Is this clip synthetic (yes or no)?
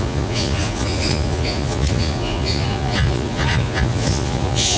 yes